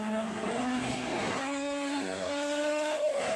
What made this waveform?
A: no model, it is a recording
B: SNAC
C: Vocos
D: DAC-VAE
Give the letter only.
B